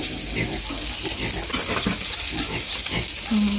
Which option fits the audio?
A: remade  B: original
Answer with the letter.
B